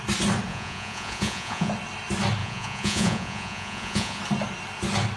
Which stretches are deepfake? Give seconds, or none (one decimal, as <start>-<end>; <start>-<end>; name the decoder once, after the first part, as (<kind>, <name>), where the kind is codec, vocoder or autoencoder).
0.5-1.7 (vocoder, Vocos); 2.4-4.2